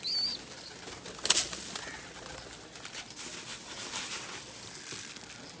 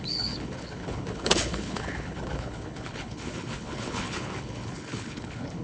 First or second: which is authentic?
first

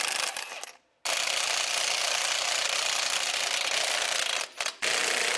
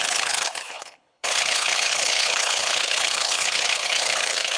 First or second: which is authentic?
first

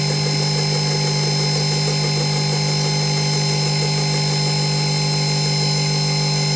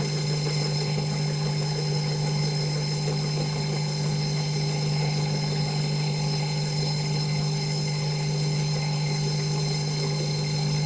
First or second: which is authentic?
first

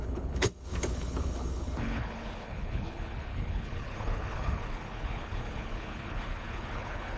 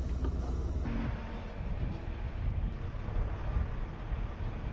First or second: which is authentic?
second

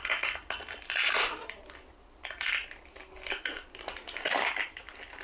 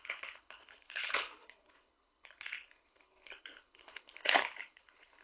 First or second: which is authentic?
first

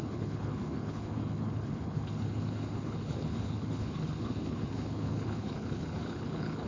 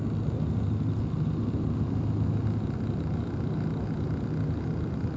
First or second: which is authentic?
second